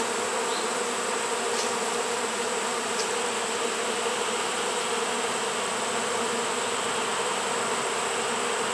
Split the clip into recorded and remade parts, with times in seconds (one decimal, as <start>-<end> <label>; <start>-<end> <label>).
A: 0.0-8.7 recorded

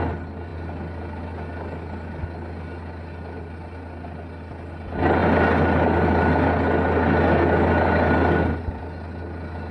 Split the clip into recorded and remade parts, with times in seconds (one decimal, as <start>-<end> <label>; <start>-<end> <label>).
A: 0.0-9.7 recorded